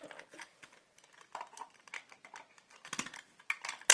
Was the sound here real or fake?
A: real